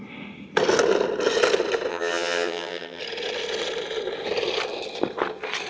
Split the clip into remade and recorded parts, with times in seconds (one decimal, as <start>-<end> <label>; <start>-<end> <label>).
0.0-1.9 recorded; 1.9-3.0 remade; 3.0-5.7 recorded